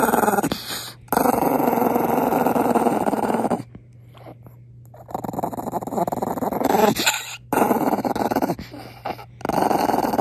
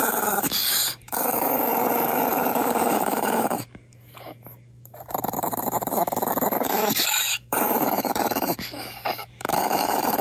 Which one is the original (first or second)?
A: first